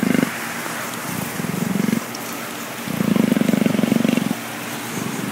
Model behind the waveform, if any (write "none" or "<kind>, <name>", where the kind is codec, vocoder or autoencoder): none